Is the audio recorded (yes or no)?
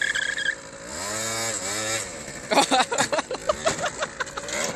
yes